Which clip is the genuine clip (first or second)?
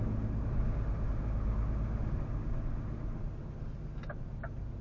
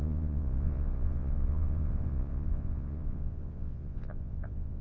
first